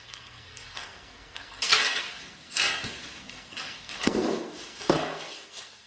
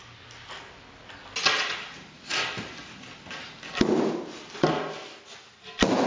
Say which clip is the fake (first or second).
first